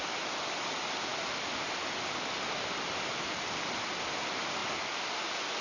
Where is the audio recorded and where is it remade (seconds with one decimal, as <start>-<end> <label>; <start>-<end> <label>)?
0.0-5.6 recorded

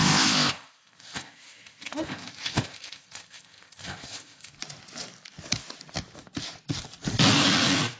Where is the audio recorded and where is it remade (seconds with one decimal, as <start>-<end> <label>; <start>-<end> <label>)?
0.0-4.5 remade; 4.5-8.0 recorded

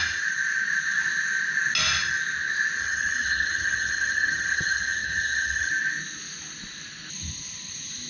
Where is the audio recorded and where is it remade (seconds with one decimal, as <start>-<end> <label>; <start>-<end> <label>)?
0.0-2.8 recorded; 2.8-5.7 remade; 5.7-8.1 recorded

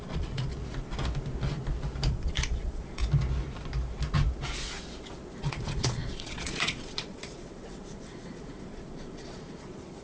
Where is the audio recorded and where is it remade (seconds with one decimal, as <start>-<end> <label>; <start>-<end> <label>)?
0.0-0.5 remade; 0.5-2.1 recorded; 2.1-3.0 remade; 3.0-5.4 recorded; 5.4-10.0 remade

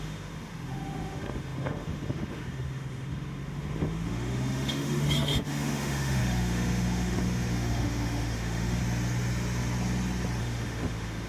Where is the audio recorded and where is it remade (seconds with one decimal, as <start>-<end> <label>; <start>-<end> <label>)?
0.0-8.8 remade; 8.8-10.4 recorded; 10.4-11.3 remade

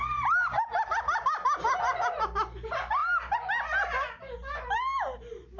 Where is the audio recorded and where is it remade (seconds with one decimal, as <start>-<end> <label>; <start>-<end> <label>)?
0.0-5.6 recorded

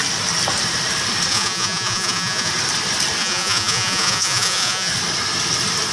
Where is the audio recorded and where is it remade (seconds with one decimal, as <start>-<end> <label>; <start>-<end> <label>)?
0.0-1.3 recorded; 1.3-2.5 remade; 2.5-3.2 recorded; 3.2-4.9 remade; 4.9-5.9 recorded

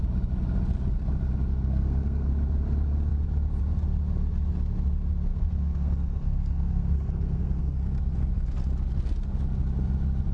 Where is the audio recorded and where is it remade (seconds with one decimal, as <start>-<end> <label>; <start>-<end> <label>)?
0.0-1.5 recorded; 1.5-2.3 remade; 2.3-5.3 recorded; 5.3-8.0 remade; 8.0-10.3 recorded